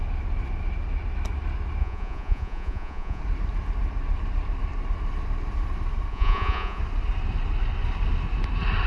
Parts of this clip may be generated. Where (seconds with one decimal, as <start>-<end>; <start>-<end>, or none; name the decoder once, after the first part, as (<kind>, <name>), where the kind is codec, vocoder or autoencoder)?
1.8-3.2 (vocoder, Vocos); 6.1-6.8